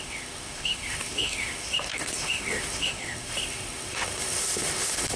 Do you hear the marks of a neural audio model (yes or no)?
yes